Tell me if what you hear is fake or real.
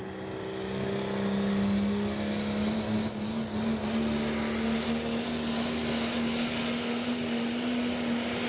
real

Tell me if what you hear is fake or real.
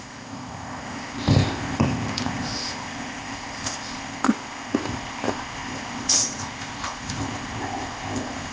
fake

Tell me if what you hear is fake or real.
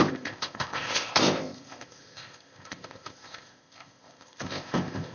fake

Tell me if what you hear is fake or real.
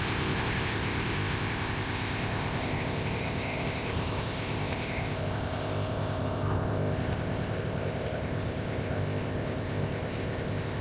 fake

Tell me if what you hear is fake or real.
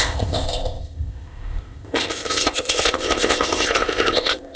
fake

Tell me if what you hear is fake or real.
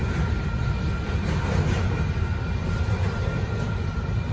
real